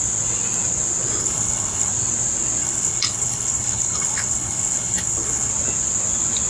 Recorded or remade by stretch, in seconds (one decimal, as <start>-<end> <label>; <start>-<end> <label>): 0.0-1.2 recorded; 1.2-1.9 remade; 1.9-2.6 recorded; 2.6-5.5 remade; 5.5-6.5 recorded